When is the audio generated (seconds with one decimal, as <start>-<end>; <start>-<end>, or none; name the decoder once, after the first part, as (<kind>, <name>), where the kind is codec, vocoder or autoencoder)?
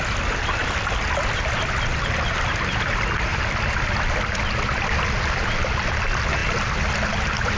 none